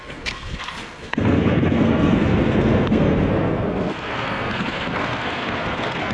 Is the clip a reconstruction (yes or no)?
yes